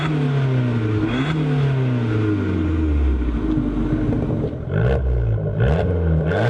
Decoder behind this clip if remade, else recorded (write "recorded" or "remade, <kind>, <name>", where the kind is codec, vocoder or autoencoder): recorded